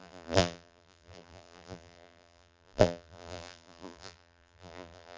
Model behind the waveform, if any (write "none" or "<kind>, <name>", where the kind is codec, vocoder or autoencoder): vocoder, BigVGAN v2